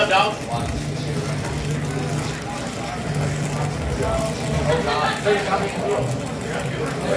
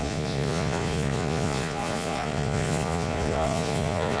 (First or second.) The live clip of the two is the first